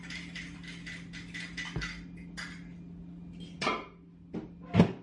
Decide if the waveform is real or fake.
real